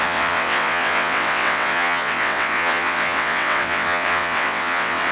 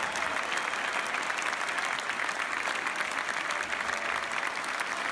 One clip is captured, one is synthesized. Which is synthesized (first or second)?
first